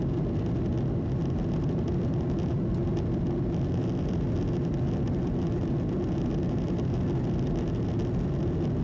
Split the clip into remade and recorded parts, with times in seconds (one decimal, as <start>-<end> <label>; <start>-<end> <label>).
0.0-8.8 recorded